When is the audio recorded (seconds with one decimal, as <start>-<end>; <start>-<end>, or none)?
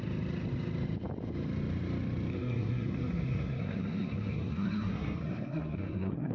0.0-2.3